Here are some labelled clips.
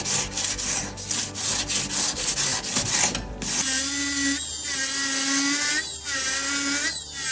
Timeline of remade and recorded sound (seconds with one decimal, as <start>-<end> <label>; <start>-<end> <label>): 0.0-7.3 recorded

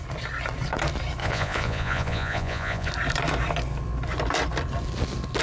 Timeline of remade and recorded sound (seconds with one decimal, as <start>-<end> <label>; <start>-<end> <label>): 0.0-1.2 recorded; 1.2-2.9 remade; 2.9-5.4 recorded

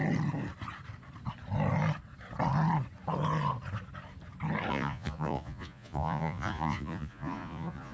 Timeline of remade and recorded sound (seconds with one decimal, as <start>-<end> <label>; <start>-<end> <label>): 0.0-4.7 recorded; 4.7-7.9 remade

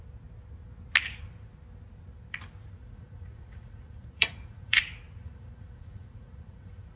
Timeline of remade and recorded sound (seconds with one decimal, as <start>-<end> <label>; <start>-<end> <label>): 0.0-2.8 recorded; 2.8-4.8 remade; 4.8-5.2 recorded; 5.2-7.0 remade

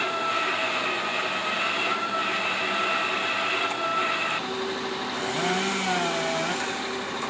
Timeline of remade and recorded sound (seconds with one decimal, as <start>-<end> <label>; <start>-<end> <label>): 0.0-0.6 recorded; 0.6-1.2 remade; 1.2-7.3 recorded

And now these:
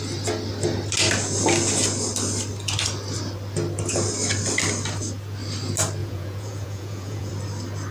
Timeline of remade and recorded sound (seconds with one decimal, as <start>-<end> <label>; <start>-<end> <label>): 0.0-6.0 recorded; 6.0-7.3 remade; 7.3-7.9 recorded

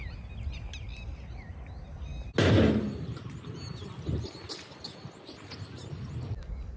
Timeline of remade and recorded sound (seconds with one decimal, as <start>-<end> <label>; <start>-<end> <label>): 0.0-6.8 recorded